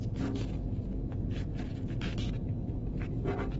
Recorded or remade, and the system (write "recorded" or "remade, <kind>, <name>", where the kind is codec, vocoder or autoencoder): recorded